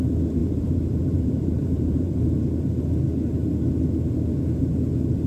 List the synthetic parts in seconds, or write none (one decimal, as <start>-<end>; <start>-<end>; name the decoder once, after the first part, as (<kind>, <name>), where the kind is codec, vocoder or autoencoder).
0.4-2.1 (vocoder, BigVGAN v2)